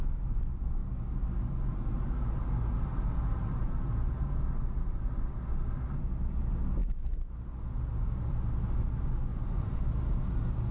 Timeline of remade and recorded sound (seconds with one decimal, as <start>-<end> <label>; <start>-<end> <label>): 0.0-9.3 recorded; 9.3-9.8 remade; 9.8-10.7 recorded